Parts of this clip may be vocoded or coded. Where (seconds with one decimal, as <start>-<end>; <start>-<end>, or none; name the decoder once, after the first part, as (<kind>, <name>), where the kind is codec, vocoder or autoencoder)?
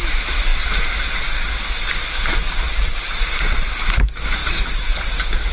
0.0-0.5 (autoencoder, DAC-VAE); 3.8-4.4